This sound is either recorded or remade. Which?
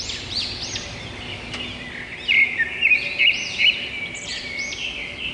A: recorded